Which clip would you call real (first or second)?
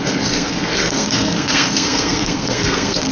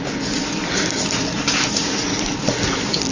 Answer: second